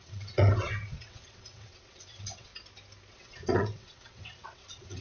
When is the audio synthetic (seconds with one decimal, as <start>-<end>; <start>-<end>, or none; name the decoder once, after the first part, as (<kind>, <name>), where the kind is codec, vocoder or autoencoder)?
0.0-2.5 (vocoder, WaveNeXt); 3.1-5.0